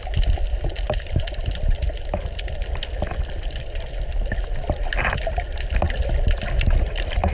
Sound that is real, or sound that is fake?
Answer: real